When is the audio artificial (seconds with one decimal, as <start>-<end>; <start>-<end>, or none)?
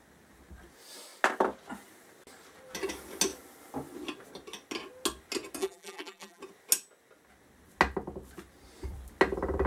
5.6-6.4